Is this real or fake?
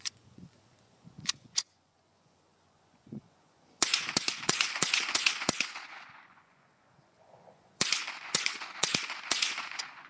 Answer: fake